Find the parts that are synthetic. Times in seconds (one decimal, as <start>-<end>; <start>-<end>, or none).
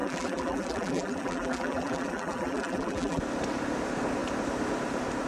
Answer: 0.0-3.2